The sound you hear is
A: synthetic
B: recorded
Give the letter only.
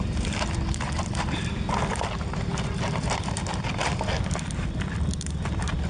B